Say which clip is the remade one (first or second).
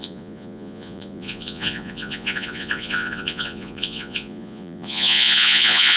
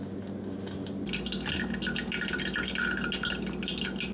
first